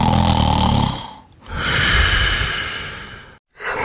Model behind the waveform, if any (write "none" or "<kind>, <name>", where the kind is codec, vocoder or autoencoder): none